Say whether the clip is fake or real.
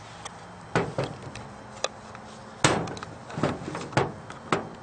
real